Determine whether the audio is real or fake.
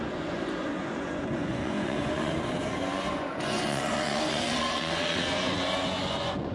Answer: fake